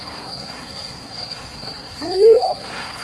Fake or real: fake